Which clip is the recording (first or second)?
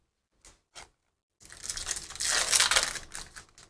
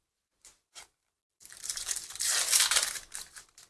first